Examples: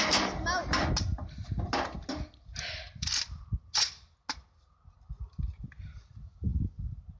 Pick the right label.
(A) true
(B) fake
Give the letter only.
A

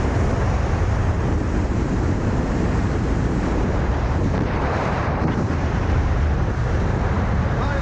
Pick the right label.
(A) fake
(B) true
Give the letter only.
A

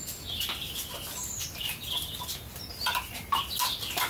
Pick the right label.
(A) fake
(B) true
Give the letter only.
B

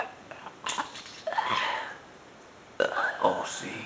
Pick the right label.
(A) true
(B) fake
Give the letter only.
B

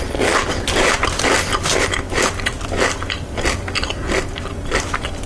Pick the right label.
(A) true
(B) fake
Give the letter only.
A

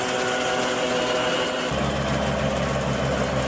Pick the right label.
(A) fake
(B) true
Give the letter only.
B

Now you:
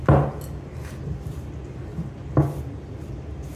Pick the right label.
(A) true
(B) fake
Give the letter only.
A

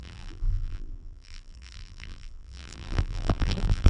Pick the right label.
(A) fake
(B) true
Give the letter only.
A